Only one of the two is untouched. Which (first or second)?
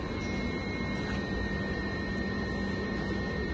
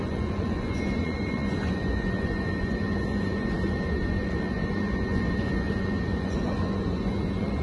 first